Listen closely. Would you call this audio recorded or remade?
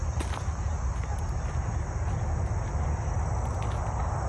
recorded